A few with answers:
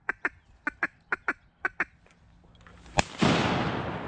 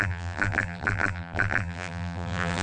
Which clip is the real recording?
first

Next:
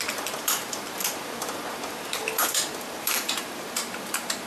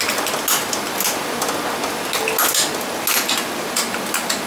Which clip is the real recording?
second